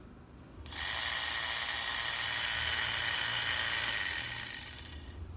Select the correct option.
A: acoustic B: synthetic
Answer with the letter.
A